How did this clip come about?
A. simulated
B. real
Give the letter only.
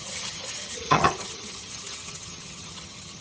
A